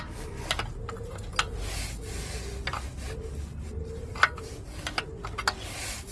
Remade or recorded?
recorded